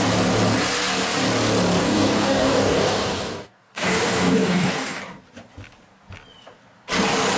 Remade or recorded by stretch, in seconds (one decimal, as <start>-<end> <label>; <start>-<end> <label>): 0.0-1.8 recorded; 1.8-5.0 remade; 5.0-7.4 recorded